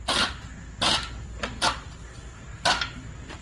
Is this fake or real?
real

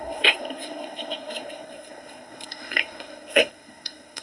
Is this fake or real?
fake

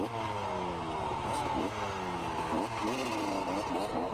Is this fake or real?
real